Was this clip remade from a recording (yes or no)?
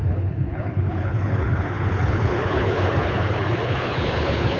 yes